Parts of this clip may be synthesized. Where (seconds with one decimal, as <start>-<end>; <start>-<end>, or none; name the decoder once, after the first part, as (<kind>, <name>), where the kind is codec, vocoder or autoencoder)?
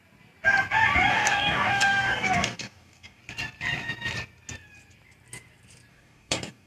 1.1-3.2 (codec, DAC); 5.9-6.7